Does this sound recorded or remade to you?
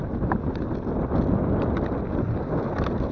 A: recorded